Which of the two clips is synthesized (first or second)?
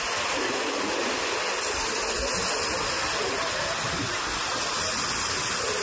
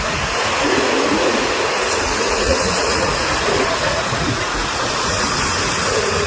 second